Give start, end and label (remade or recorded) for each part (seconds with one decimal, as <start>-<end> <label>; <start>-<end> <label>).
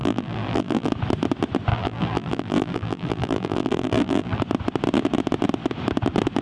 0.0-0.9 remade; 0.9-1.7 recorded; 1.7-4.4 remade; 4.4-6.4 recorded